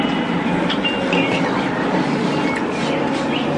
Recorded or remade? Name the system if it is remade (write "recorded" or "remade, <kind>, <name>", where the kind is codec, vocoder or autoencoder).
recorded